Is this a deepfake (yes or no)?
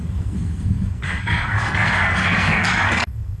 yes